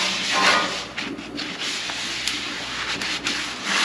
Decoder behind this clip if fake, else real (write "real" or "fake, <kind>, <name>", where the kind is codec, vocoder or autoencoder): real